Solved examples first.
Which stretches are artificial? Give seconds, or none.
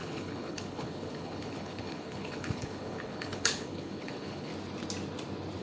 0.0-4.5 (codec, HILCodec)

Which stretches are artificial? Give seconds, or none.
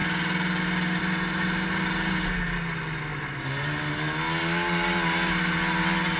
none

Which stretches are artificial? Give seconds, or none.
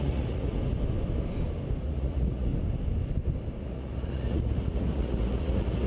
0.0-0.6 (vocoder, Vocos); 1.8-2.5; 3.6-5.9